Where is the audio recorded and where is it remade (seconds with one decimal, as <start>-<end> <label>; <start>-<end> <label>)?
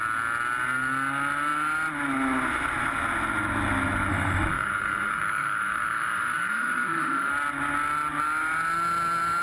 0.0-4.1 recorded; 4.1-7.3 remade; 7.3-9.4 recorded